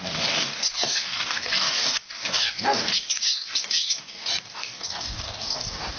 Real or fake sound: fake